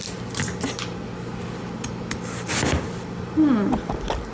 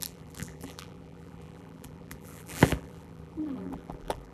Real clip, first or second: first